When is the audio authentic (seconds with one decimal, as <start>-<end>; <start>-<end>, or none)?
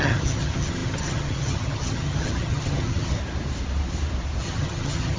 3.2-4.4